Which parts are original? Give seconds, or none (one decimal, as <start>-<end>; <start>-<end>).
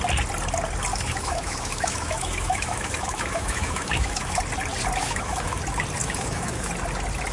0.0-0.9; 4.4-5.0; 5.6-6.0; 6.7-7.3